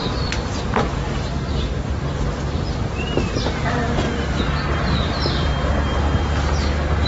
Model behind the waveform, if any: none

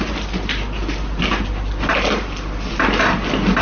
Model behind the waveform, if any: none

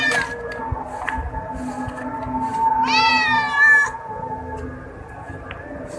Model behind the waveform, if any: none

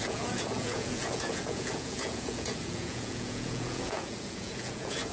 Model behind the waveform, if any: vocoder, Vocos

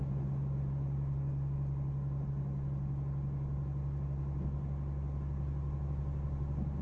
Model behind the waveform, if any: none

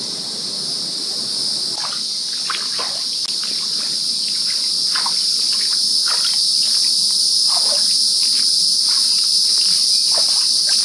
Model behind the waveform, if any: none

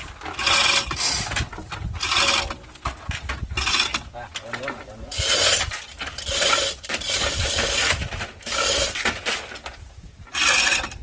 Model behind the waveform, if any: none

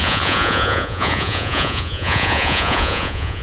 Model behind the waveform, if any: vocoder, Vocos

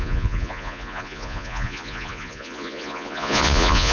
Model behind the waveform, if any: vocoder, Vocos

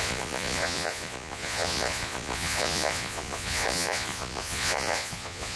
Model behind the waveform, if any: vocoder, Vocos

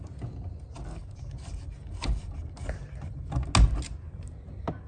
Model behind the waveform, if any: none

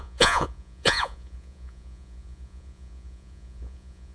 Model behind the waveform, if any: vocoder, Vocos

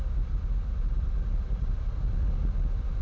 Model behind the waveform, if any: none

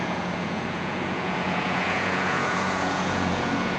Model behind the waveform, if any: vocoder, Vocos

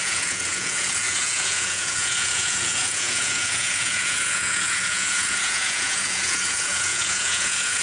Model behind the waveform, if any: vocoder, Vocos